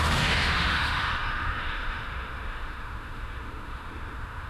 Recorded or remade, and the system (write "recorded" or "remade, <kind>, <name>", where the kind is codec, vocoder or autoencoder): remade, autoencoder, DAC-VAE